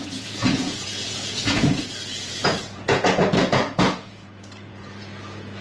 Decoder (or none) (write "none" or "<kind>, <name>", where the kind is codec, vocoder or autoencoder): vocoder, Vocos